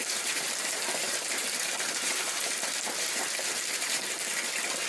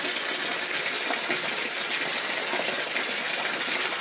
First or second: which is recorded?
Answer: second